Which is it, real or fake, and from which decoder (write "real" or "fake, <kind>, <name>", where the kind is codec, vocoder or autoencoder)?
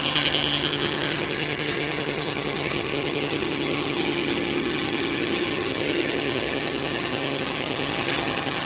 fake, vocoder, HiFi-GAN